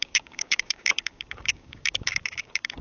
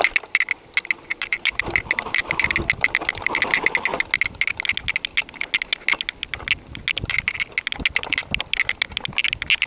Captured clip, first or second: second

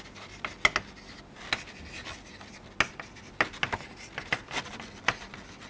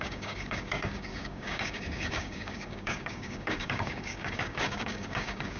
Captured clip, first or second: first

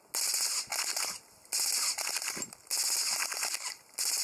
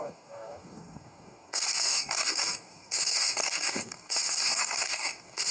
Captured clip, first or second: first